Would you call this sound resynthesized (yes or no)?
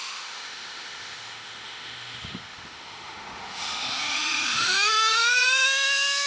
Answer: yes